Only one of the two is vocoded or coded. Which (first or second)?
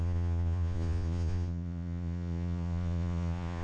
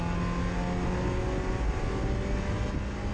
first